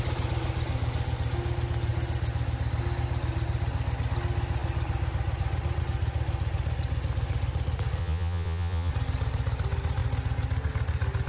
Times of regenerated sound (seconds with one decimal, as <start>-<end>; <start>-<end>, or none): 8.0-8.9